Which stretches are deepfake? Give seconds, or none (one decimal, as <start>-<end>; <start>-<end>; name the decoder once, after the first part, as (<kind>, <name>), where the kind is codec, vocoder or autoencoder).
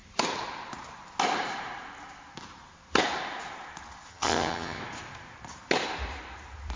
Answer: 4.1-4.8 (vocoder, HiFi-GAN)